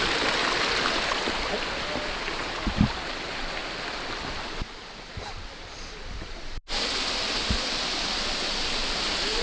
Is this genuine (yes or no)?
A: yes